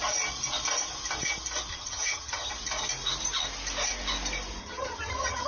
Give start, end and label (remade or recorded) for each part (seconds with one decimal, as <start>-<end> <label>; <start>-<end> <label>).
0.0-1.7 recorded; 1.7-2.5 remade; 2.5-4.6 recorded; 4.6-5.5 remade